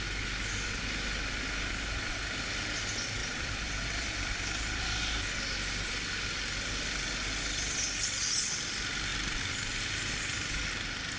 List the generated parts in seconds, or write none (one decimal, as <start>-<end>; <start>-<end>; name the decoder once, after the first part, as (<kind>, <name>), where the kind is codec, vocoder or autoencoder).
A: 3.2-4.4 (vocoder, BigVGAN v2)